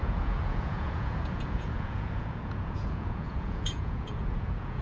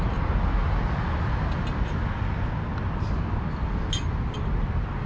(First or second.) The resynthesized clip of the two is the first